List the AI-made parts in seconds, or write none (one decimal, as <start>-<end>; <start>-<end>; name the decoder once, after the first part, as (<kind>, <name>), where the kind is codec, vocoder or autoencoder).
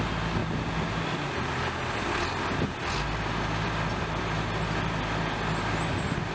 none